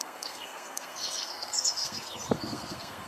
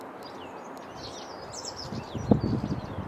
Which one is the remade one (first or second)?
first